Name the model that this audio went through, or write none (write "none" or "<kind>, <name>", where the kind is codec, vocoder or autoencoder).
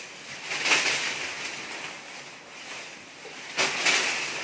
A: none